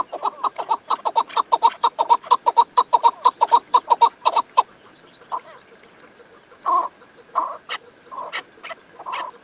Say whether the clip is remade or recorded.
recorded